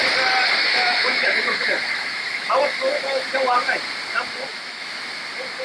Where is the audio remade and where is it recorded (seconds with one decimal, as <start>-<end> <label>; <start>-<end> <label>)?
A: 0.0-0.6 recorded; 0.6-3.3 remade; 3.3-4.5 recorded; 4.5-5.1 remade; 5.1-5.6 recorded